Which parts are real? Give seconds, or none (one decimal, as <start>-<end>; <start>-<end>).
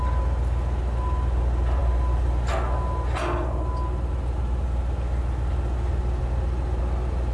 0.0-7.3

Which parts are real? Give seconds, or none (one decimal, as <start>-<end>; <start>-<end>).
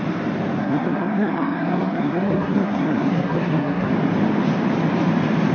0.0-0.6; 3.9-5.5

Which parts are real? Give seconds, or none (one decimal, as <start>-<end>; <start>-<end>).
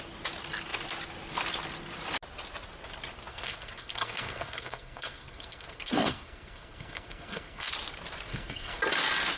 0.0-3.3; 7.7-8.3; 8.8-9.4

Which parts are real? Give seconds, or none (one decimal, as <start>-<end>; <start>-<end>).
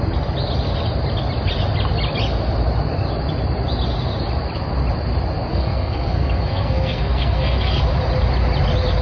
0.0-5.5; 7.8-9.0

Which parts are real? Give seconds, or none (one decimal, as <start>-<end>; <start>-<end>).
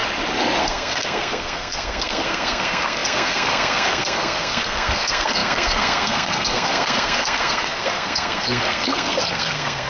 0.0-0.6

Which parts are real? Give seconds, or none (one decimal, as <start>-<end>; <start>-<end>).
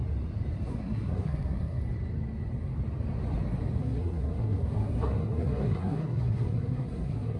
0.0-0.7; 1.8-3.8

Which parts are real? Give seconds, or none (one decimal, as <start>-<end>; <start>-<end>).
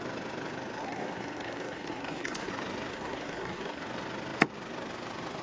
0.0-0.8; 2.5-2.9; 3.8-5.4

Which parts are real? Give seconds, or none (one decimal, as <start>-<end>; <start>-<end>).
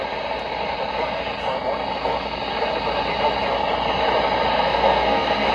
0.0-4.5